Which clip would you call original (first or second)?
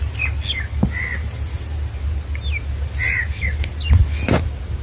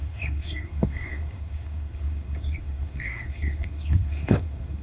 first